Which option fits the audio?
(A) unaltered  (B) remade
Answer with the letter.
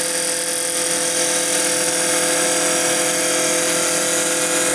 A